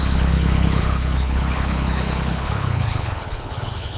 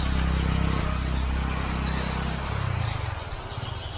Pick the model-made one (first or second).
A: first